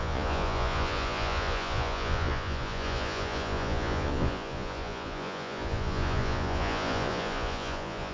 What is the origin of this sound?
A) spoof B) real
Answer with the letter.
A